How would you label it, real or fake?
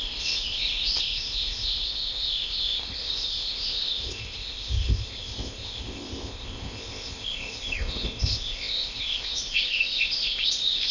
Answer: fake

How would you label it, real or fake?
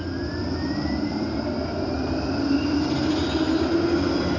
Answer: real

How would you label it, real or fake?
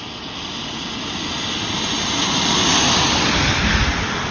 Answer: real